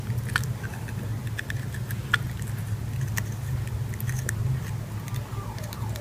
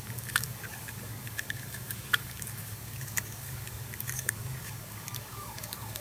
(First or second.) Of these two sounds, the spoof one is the second